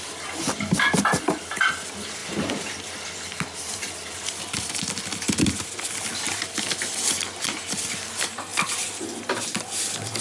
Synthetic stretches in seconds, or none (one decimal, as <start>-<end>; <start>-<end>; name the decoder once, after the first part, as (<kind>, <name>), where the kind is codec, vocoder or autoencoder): 2.2-4.4 (vocoder, BigVGAN v2); 8.5-9.2